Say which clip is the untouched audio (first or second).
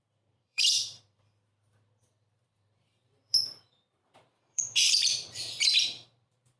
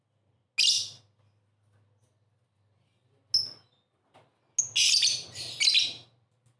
second